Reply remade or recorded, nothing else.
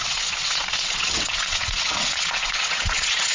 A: remade